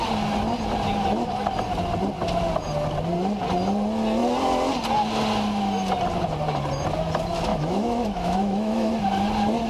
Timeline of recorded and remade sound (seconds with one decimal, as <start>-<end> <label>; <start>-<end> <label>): 0.0-7.5 recorded; 7.5-8.9 remade; 8.9-9.7 recorded